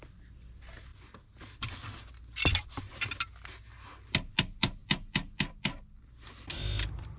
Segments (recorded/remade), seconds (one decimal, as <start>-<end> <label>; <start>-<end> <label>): 0.0-7.2 recorded